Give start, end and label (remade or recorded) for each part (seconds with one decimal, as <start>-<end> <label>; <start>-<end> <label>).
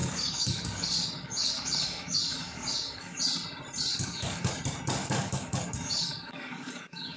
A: 0.0-3.2 remade; 3.2-3.9 recorded; 3.9-4.5 remade; 4.5-5.0 recorded; 5.0-7.2 remade